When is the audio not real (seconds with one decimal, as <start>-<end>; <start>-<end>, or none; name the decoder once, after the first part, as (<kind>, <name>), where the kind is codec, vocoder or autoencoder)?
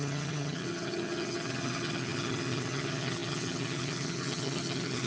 0.0-5.1 (vocoder, HiFi-GAN)